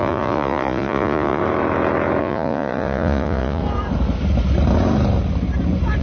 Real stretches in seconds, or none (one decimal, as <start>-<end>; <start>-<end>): 1.4-2.2; 3.6-6.0

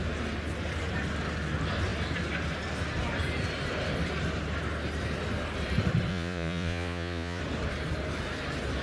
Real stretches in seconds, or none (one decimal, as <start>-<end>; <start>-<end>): 0.0-6.1; 7.4-8.8